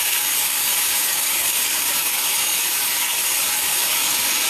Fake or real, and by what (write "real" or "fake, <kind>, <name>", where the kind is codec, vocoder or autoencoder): fake, codec, DAC